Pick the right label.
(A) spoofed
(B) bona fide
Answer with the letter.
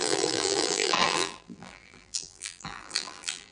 A